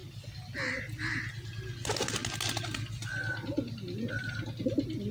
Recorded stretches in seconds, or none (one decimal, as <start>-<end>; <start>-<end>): 0.0-5.1